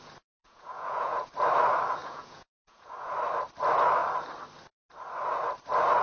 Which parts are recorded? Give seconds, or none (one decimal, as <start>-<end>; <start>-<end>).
0.0-0.4; 1.3-2.0; 3.1-6.0